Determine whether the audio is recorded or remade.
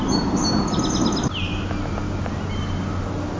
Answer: recorded